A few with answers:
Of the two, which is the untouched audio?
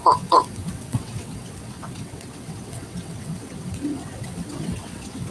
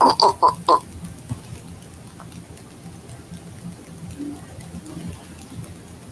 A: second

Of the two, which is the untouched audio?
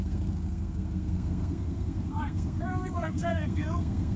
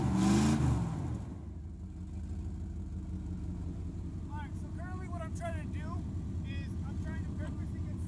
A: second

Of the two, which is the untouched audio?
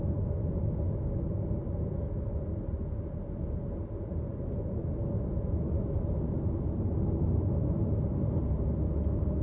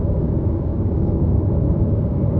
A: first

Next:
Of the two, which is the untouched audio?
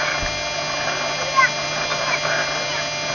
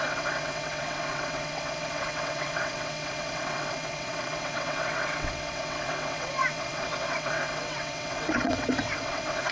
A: first